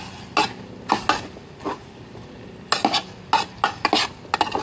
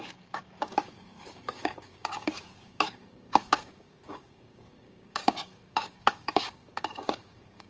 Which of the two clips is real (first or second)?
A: first